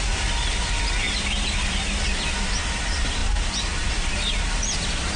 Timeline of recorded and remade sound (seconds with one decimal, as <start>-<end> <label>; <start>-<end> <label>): 0.0-3.2 remade; 3.2-5.2 recorded